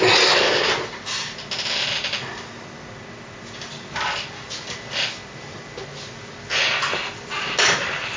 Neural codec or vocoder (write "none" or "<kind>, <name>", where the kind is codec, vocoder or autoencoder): none